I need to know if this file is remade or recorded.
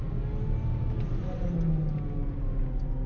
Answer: recorded